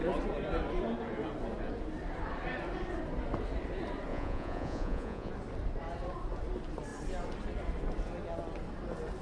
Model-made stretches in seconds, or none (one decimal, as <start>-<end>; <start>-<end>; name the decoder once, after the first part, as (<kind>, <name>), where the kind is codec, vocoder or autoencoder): 4.1-5.3 (vocoder, Vocos)